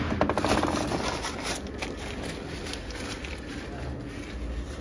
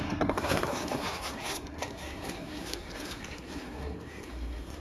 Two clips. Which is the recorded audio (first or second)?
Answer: first